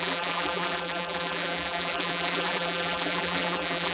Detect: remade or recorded remade